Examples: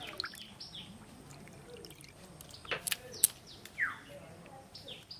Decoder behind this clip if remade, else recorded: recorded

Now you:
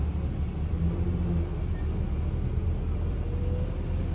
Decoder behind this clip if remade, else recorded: recorded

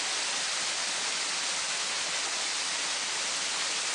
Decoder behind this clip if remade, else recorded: recorded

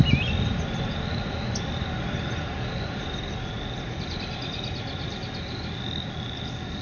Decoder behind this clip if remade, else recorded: recorded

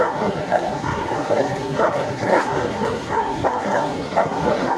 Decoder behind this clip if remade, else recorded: remade, codec, SNAC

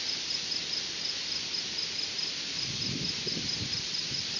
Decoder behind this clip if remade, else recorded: recorded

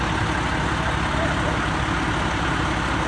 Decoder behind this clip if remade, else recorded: recorded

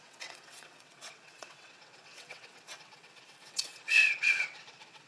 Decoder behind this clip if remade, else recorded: remade, vocoder, WaveNeXt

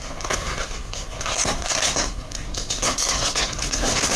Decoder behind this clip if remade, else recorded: remade, codec, SNAC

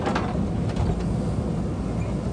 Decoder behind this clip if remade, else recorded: recorded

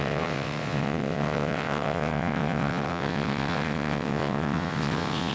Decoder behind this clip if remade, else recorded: remade, vocoder, WaveNeXt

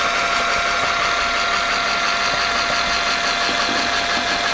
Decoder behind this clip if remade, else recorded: recorded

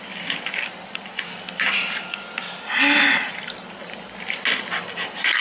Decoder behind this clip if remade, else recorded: recorded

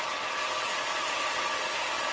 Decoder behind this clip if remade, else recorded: recorded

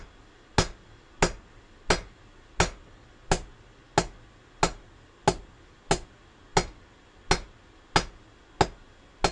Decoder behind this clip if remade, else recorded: recorded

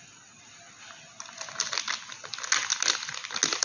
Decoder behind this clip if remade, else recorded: recorded